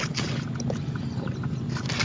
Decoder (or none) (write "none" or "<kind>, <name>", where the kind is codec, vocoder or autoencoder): none